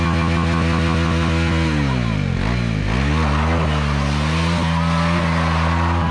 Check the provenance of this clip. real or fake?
real